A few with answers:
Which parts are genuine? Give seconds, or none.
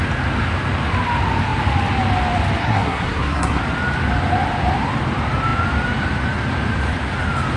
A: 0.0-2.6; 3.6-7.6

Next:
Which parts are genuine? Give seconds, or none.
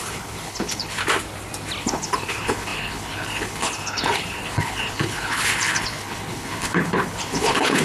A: 1.0-1.8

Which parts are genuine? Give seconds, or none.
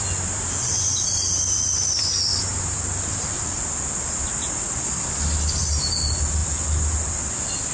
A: none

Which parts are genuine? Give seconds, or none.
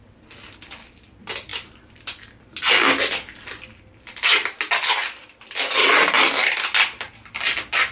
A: 0.0-7.9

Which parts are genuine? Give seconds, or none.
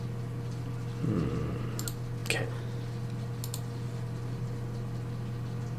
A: 0.0-5.8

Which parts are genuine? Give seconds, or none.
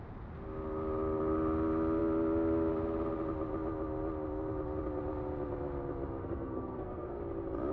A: 0.0-6.2; 7.2-7.7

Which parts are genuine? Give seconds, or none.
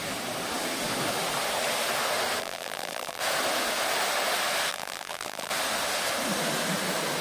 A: 0.0-2.4; 3.2-4.7; 5.5-7.2